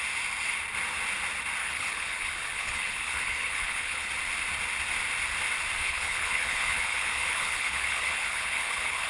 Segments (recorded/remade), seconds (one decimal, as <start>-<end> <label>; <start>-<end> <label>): 0.0-1.6 recorded; 1.6-4.1 remade; 4.1-5.8 recorded; 5.8-9.1 remade